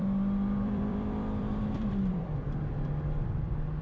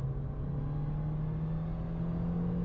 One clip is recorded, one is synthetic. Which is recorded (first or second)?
second